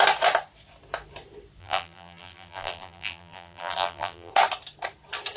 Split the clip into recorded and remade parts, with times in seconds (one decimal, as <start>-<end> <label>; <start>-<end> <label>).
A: 0.0-1.6 recorded; 1.6-4.3 remade; 4.3-5.4 recorded